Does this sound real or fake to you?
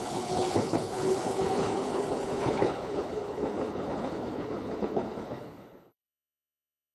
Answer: fake